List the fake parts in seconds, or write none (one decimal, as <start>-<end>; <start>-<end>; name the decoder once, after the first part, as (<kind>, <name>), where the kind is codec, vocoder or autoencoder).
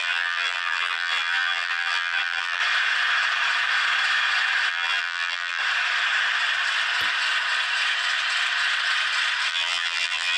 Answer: 0.0-2.6 (vocoder, BigVGAN v2); 4.7-5.6; 9.5-10.4